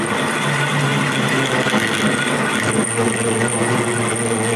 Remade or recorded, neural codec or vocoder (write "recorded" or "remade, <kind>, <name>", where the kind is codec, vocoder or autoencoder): recorded